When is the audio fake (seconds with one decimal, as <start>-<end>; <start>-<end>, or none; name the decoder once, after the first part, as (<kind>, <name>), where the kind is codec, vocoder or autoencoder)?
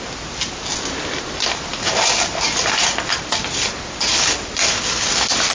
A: none